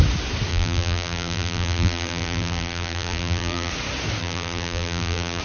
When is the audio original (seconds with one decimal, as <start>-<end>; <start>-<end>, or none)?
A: 0.0-0.5; 3.7-4.2